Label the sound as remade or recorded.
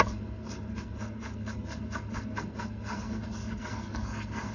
remade